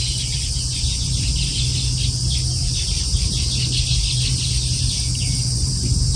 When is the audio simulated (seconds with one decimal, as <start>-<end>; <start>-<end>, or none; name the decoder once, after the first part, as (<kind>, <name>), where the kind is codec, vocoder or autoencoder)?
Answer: 0.0-1.7 (vocoder, Vocos); 5.4-6.2